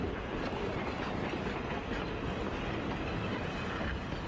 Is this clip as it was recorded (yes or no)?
yes